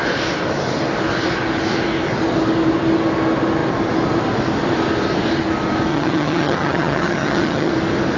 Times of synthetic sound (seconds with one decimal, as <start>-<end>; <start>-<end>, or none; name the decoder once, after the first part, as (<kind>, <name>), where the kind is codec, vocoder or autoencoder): 5.9-7.7 (vocoder, HiFi-GAN)

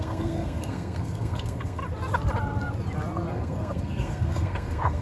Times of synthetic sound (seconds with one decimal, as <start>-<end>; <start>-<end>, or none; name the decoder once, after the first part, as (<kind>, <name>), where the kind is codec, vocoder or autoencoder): 0.0-1.8 (codec, SNAC); 3.3-5.0

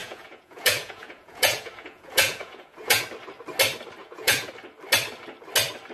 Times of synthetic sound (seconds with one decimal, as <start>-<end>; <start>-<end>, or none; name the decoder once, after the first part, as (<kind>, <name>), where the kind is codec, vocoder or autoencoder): 0.0-3.0 (vocoder, Vocos); 4.0-4.5

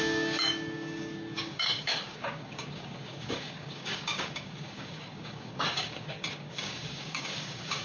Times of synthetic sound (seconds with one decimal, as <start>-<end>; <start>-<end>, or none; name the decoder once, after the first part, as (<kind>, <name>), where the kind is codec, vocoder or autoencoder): 0.0-7.8 (codec, DAC)